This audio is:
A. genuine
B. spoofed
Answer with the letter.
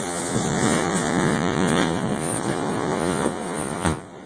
B